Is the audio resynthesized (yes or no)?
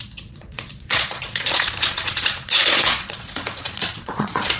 yes